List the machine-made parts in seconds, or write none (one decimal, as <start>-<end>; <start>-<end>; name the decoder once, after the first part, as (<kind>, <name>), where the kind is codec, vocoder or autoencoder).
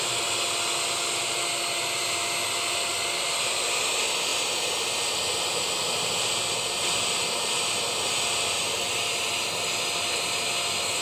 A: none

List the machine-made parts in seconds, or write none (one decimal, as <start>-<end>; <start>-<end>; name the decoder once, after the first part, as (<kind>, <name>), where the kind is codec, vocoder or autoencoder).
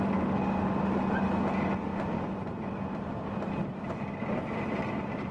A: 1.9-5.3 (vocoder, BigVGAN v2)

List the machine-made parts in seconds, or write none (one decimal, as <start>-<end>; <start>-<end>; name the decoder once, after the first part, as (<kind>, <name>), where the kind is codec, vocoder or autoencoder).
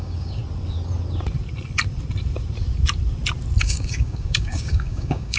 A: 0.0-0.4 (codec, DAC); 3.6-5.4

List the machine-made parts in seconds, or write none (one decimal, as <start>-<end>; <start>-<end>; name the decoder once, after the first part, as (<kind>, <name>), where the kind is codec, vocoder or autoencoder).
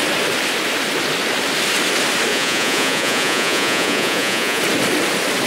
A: 2.3-4.6 (vocoder, Vocos)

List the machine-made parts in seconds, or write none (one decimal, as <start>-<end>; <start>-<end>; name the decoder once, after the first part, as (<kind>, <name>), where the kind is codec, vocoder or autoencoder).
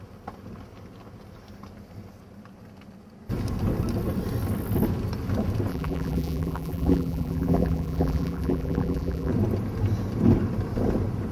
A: 5.7-9.3 (vocoder, BigVGAN v2)